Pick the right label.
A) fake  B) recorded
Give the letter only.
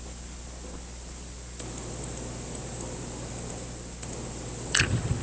B